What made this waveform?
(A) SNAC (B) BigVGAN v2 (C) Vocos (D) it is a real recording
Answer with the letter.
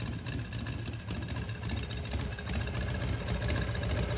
D